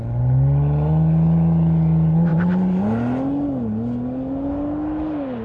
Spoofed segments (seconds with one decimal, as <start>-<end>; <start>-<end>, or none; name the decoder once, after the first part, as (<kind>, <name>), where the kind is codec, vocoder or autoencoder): 2.3-2.8 (vocoder, Vocos)